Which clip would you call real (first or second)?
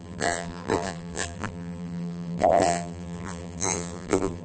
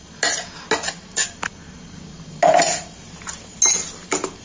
second